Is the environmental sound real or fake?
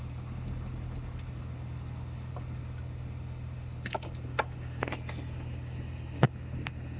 real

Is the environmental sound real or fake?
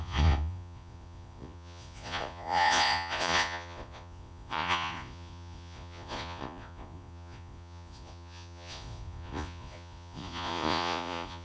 fake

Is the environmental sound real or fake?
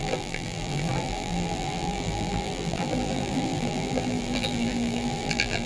fake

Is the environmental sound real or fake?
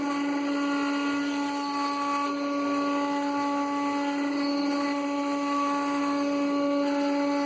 real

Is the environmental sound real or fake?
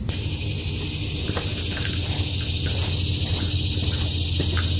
real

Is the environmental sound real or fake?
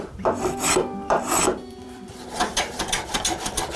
fake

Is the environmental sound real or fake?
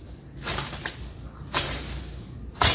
real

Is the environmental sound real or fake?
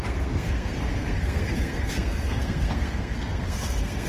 fake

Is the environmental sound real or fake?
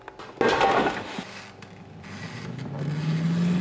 real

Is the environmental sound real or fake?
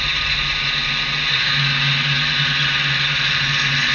real